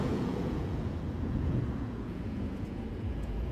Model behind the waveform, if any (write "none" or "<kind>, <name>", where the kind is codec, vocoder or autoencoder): vocoder, Vocos